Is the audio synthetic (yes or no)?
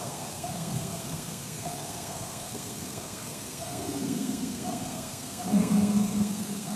yes